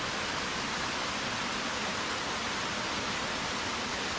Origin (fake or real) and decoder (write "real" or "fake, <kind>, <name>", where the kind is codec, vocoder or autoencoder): real